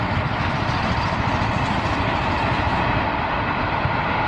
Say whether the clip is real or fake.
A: real